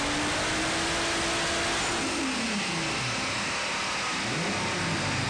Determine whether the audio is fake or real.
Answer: real